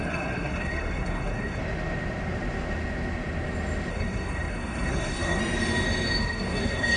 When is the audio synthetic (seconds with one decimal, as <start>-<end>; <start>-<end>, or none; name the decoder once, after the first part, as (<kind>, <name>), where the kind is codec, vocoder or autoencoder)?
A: 0.0-1.6 (codec, SNAC); 3.9-5.4; 6.2-7.0